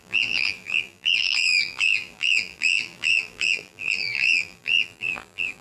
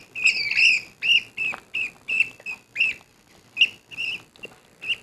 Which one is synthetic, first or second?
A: first